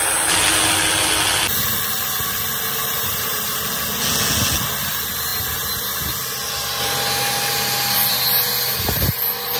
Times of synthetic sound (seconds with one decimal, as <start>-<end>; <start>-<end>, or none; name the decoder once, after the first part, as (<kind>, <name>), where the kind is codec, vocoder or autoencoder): 2.8-3.6 (vocoder, BigVGAN v2)